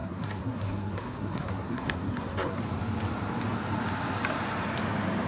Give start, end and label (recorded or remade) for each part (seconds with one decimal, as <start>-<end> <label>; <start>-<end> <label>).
0.0-2.6 remade; 2.6-5.3 recorded